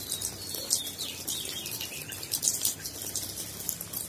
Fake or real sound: real